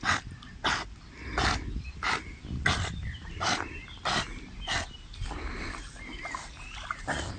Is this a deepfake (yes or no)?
no